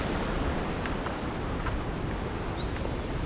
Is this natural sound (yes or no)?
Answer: yes